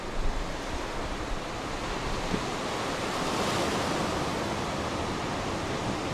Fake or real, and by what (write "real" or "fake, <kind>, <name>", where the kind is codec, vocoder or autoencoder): real